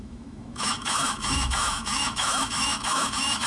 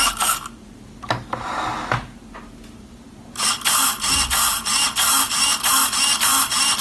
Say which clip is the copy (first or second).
first